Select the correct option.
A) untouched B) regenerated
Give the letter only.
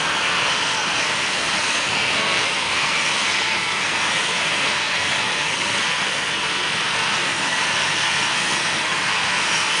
B